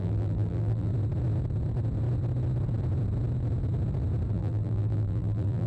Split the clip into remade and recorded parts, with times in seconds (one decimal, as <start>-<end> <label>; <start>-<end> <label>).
0.0-0.9 remade; 0.9-4.3 recorded; 4.3-5.7 remade